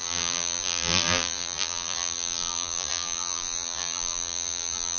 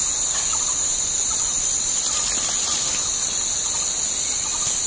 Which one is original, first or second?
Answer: second